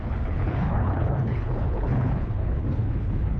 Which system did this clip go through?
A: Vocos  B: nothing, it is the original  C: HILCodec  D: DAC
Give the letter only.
C